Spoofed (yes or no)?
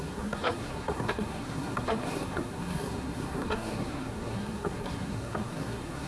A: yes